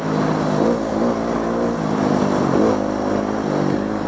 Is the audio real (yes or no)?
yes